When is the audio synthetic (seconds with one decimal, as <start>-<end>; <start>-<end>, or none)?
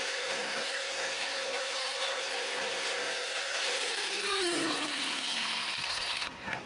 0.0-6.7